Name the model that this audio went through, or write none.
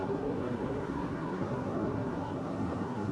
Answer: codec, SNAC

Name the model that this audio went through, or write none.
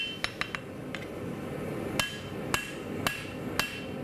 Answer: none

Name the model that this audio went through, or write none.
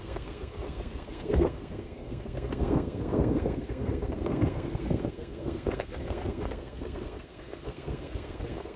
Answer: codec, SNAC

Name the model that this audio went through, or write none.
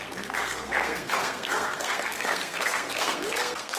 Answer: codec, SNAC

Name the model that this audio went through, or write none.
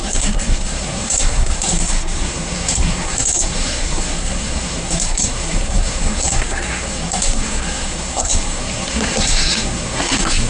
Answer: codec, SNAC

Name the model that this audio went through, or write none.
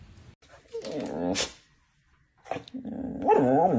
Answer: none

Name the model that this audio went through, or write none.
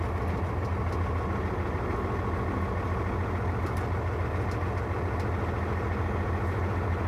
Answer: none